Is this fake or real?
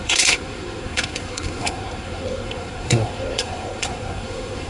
fake